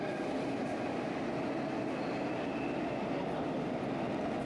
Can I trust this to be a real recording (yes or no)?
yes